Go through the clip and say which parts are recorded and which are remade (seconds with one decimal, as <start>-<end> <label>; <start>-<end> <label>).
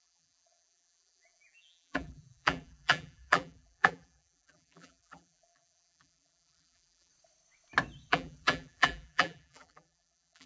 0.0-7.1 remade; 7.1-8.1 recorded; 8.1-10.5 remade